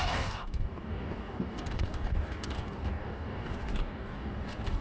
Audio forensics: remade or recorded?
remade